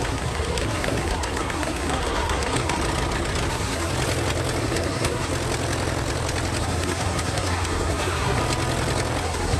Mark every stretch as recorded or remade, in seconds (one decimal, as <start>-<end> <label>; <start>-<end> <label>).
0.0-2.8 remade; 2.8-3.5 recorded; 3.5-3.9 remade; 3.9-4.6 recorded; 4.6-5.3 remade; 5.3-6.6 recorded; 6.6-8.4 remade; 8.4-9.2 recorded; 9.2-9.6 remade